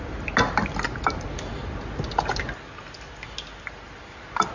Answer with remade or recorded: recorded